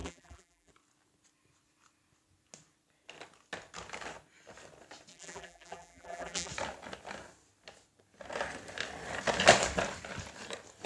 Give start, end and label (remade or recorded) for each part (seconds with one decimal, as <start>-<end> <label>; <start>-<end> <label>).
0.0-0.7 remade; 0.7-5.1 recorded; 5.1-6.5 remade; 6.5-10.9 recorded